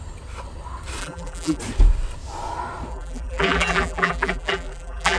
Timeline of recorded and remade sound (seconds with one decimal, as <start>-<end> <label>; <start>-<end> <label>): 0.0-1.0 recorded; 1.0-1.6 remade; 1.6-2.9 recorded; 2.9-5.2 remade